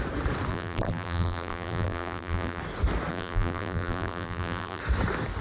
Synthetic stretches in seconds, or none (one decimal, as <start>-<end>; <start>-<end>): 0.5-2.6; 3.1-4.8